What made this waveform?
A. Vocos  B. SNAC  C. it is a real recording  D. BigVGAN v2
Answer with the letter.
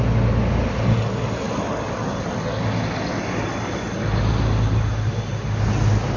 C